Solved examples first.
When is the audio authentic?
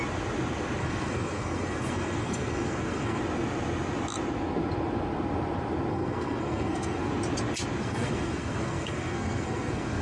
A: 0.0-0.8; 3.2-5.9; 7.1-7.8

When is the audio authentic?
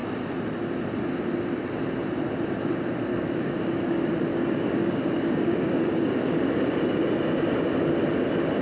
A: 0.0-3.1; 3.9-4.3; 6.4-8.6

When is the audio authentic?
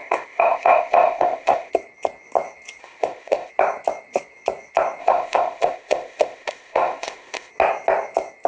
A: 1.7-2.8; 3.5-5.0; 7.5-8.5